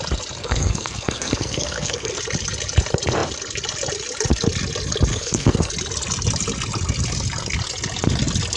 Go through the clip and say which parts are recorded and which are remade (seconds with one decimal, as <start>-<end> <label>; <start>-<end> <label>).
0.0-0.4 recorded; 0.4-2.2 remade; 2.2-5.1 recorded; 5.1-5.7 remade; 5.7-8.6 recorded